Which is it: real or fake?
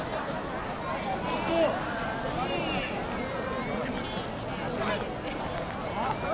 real